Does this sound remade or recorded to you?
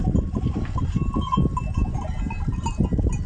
recorded